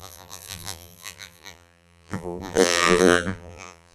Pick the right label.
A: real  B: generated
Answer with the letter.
B